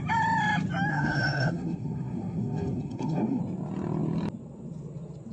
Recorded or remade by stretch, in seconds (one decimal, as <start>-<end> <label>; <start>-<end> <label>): 0.0-0.9 recorded; 0.9-3.4 remade; 3.4-5.3 recorded